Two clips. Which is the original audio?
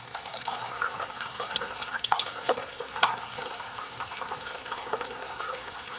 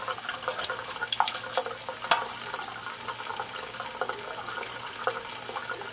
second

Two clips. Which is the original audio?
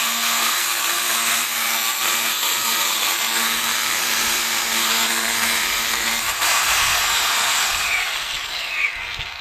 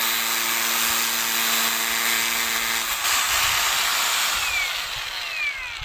second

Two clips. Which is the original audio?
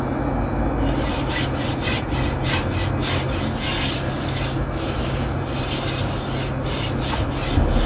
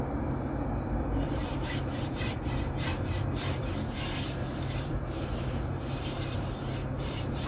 first